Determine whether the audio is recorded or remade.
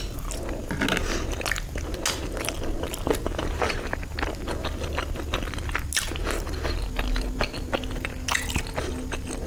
recorded